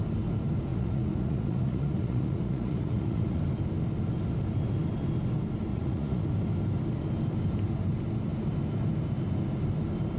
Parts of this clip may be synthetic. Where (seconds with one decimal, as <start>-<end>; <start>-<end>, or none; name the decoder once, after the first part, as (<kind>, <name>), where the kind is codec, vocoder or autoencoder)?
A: 0.7-3.4 (vocoder, Vocos); 5.7-6.3